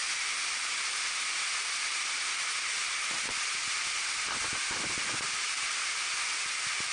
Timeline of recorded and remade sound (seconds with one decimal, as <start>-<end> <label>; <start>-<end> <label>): 0.0-6.9 recorded